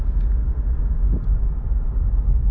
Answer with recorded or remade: recorded